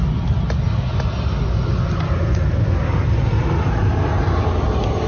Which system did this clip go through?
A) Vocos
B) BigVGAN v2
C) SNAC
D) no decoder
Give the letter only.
D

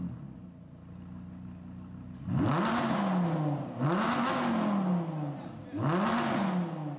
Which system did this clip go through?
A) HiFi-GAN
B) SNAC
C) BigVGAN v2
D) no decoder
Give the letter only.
D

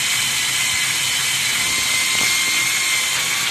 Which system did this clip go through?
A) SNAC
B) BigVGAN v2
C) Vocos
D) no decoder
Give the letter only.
D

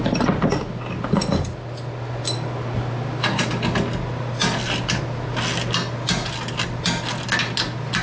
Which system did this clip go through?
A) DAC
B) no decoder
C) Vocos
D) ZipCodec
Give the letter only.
B